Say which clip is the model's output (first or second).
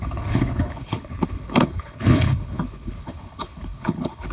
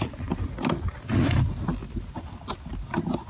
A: first